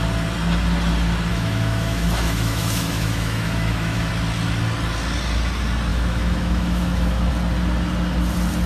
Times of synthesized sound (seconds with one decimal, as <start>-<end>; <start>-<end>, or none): 1.3-4.1; 5.9-7.3